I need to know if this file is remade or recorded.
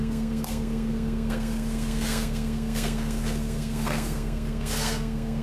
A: remade